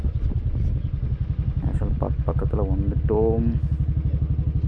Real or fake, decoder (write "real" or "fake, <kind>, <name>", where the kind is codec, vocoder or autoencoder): real